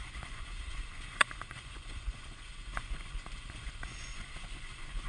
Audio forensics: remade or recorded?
remade